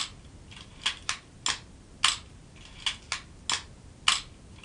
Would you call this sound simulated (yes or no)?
no